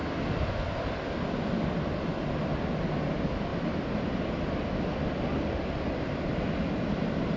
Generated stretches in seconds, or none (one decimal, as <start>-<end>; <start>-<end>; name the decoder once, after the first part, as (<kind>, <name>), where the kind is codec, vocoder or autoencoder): none